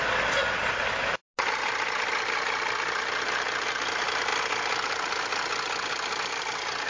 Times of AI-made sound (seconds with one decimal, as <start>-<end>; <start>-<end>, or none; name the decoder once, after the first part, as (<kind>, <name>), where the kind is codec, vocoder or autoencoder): none